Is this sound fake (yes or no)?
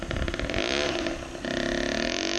no